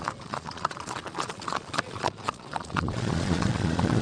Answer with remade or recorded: remade